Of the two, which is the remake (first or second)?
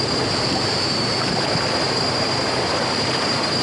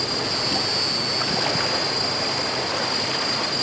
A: first